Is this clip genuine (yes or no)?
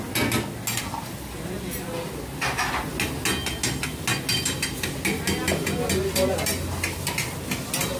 yes